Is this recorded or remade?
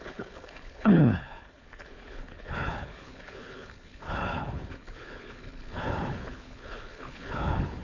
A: remade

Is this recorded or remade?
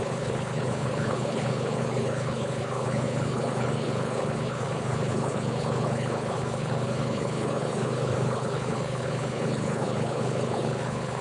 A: remade